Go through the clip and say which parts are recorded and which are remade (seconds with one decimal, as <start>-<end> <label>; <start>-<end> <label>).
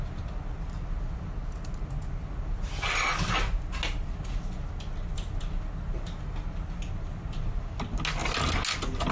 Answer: 0.0-9.1 recorded